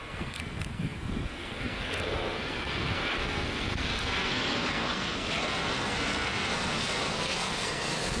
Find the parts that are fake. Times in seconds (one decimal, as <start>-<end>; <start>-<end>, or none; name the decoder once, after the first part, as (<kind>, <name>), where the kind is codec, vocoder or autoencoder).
0.0-8.2 (codec, SNAC)